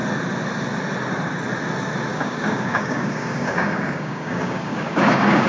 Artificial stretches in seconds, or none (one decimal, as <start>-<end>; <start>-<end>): 2.1-5.5

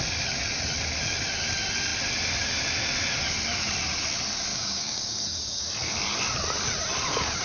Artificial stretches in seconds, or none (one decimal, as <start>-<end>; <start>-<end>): 4.5-5.6